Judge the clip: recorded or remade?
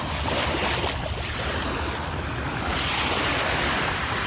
recorded